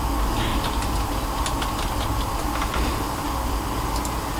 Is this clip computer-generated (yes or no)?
no